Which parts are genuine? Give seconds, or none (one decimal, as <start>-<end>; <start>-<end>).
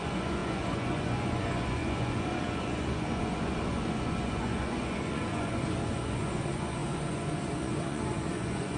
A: none